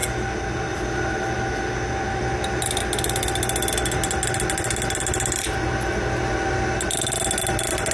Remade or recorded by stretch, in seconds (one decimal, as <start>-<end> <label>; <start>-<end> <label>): 0.0-7.9 recorded